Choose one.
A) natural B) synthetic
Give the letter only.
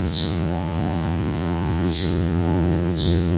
B